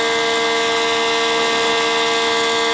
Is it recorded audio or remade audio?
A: recorded